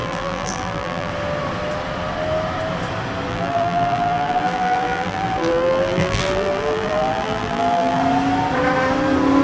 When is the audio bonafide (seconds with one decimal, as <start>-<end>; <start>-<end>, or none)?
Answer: 1.1-3.3; 8.0-9.4